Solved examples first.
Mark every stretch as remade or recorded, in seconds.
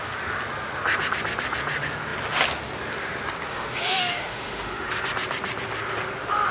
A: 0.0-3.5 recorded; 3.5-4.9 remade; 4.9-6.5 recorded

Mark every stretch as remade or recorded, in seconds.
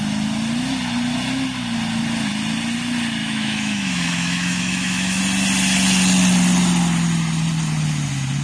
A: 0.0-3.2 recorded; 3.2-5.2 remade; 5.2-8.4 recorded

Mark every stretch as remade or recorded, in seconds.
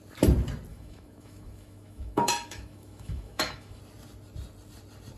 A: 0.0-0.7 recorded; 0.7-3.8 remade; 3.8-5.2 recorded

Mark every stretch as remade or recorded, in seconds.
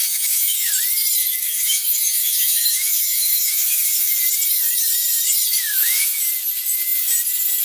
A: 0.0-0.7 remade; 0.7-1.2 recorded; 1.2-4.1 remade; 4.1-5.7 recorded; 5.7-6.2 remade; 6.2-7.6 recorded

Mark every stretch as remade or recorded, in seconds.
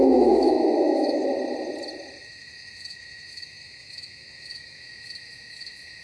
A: 0.0-1.2 remade; 1.2-2.2 recorded; 2.2-6.0 remade